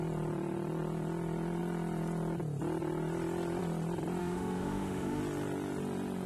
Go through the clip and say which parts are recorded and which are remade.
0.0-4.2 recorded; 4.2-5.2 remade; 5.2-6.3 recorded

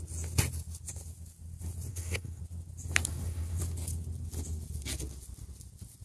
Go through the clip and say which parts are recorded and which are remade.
0.0-1.9 recorded; 1.9-2.4 remade; 2.4-3.1 recorded; 3.1-3.6 remade; 3.6-6.0 recorded

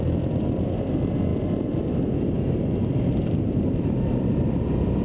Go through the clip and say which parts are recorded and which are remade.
0.0-5.0 recorded